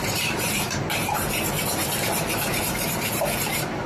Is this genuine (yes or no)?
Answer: no